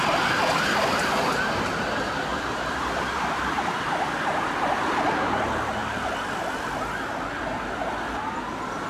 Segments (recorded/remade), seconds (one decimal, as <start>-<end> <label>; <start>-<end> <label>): 0.0-2.3 recorded; 2.3-3.9 remade; 3.9-5.8 recorded; 5.8-6.4 remade; 6.4-8.9 recorded